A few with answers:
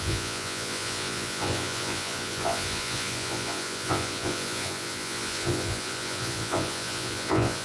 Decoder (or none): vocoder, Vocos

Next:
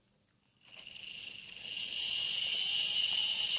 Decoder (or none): none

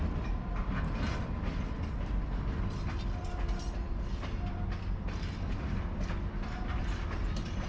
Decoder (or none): none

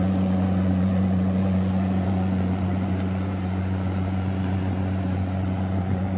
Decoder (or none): vocoder, Vocos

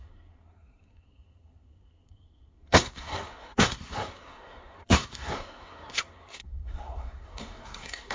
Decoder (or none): codec, SNAC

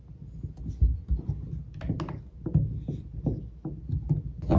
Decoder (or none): none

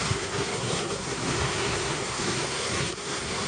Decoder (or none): codec, SNAC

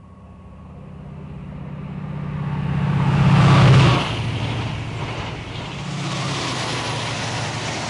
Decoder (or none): none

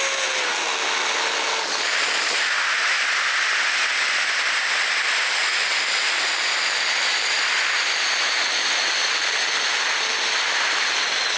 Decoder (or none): none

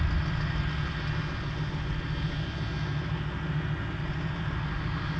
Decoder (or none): none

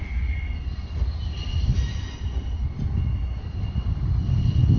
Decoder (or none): none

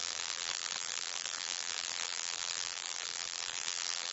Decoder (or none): vocoder, BigVGAN v2